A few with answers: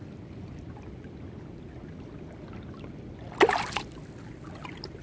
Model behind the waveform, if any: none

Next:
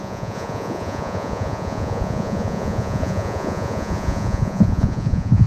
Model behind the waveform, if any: vocoder, Vocos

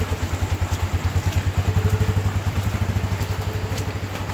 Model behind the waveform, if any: none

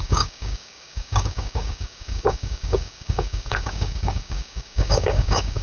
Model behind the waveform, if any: codec, DAC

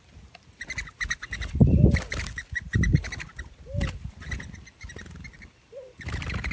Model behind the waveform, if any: none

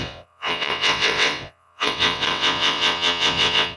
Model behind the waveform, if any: vocoder, WaveNeXt